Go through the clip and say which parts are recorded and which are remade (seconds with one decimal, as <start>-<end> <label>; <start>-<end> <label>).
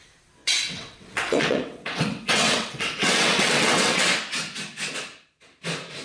0.0-0.4 recorded; 0.4-4.0 remade; 4.0-6.0 recorded